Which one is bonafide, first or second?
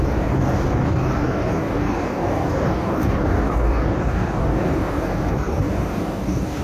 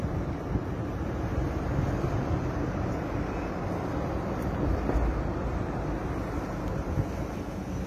second